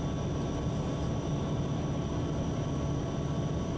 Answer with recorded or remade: recorded